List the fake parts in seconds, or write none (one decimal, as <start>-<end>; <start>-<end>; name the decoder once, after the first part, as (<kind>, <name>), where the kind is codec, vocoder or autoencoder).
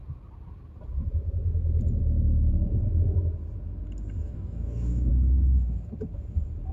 4.2-5.1 (codec, DAC)